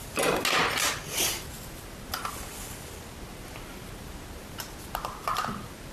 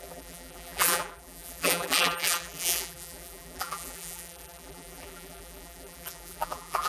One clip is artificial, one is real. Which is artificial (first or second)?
second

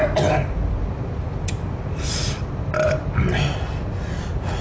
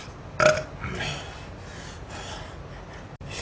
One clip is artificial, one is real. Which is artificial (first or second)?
first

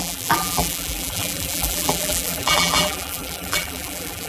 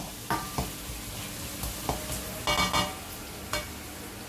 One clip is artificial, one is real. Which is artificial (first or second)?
first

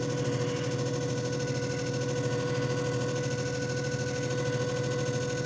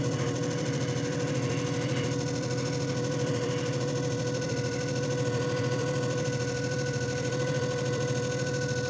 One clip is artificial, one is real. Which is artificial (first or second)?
second